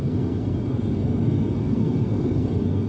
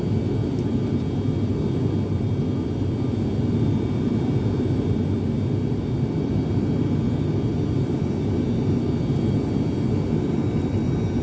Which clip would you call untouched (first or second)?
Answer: second